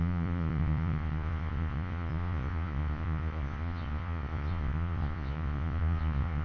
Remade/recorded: remade